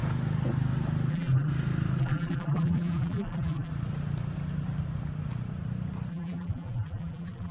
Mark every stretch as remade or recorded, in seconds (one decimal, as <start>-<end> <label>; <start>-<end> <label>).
0.0-1.1 recorded; 1.1-1.5 remade; 1.5-2.0 recorded; 2.0-3.7 remade; 3.7-6.1 recorded; 6.1-7.5 remade